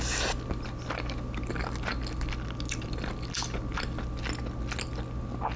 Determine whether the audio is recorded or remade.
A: recorded